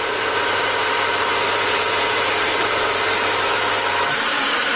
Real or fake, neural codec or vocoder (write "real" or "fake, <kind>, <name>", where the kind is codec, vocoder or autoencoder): fake, vocoder, BigVGAN v2